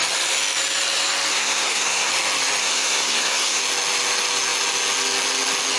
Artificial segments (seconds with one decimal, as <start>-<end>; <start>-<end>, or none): 1.3-2.1; 2.6-3.6